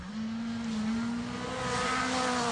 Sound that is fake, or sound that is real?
real